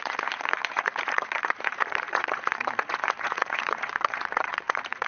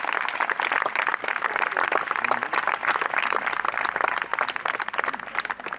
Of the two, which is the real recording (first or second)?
second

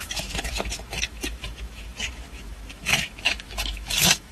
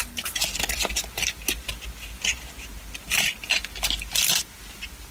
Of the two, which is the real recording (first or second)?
second